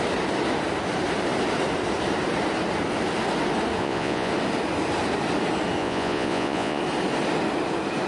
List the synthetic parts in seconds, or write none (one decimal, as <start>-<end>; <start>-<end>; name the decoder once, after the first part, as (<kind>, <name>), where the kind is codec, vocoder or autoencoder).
3.8-4.3 (vocoder, Vocos); 5.8-6.8